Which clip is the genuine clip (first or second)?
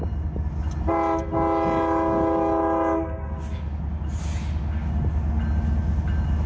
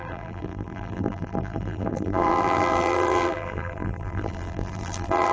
first